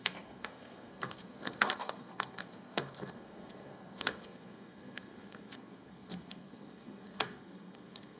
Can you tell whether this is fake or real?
fake